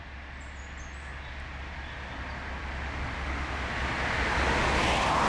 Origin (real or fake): real